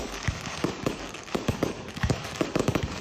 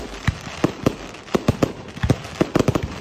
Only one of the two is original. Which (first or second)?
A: second